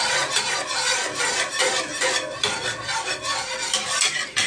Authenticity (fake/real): real